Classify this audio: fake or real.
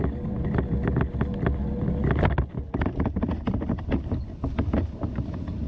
real